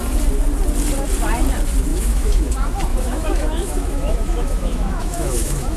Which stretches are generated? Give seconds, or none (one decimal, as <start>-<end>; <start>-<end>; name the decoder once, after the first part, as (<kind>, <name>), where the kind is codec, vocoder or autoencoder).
1.9-2.5 (autoencoder, DAC-VAE); 2.9-5.8